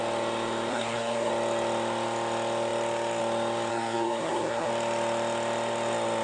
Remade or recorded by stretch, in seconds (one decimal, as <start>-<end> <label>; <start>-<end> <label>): 0.0-0.7 recorded; 0.7-1.3 remade; 1.3-3.7 recorded; 3.7-4.7 remade; 4.7-6.2 recorded

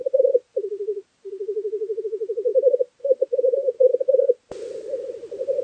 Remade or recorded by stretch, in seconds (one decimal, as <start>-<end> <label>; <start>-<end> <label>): 0.0-5.6 recorded

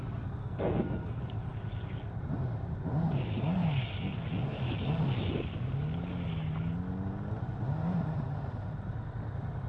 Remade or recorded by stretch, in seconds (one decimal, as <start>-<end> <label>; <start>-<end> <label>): 0.0-0.4 recorded; 0.4-1.2 remade; 1.2-9.7 recorded

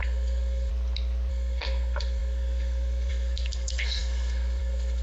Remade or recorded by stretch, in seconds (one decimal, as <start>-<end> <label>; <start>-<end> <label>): 0.0-0.7 remade; 0.7-1.3 recorded; 1.3-5.0 remade

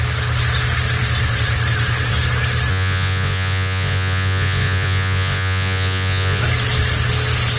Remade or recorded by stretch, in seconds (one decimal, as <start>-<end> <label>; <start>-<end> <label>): 0.0-2.7 recorded; 2.7-6.4 remade; 6.4-7.6 recorded

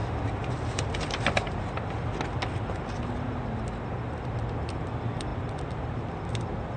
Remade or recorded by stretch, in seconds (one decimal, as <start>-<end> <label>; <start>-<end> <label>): 0.0-6.8 recorded

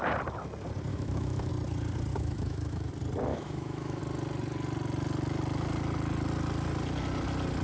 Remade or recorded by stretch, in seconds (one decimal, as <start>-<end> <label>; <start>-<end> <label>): 0.0-0.9 recorded; 0.9-1.5 remade; 1.5-2.1 recorded; 2.1-2.9 remade; 2.9-3.3 recorded; 3.3-4.0 remade; 4.0-7.6 recorded